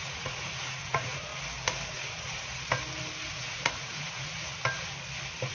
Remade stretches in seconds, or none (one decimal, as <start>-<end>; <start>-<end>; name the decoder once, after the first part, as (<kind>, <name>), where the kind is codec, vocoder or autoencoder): 0.0-1.3 (vocoder, Vocos); 1.9-2.5; 3.3-4.5